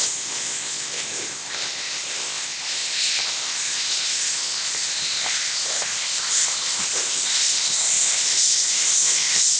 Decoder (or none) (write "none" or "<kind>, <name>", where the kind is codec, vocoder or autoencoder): codec, ZipCodec